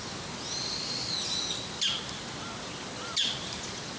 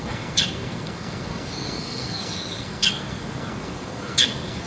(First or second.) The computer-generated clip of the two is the second